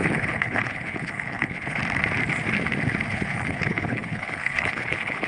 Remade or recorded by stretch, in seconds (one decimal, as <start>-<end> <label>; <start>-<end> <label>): 0.0-1.8 remade; 1.8-3.1 recorded; 3.1-5.3 remade